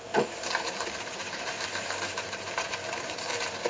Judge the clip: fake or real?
real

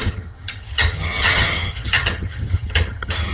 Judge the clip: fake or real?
fake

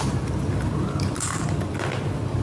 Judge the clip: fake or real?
real